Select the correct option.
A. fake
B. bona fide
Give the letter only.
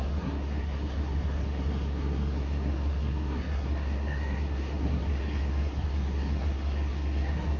A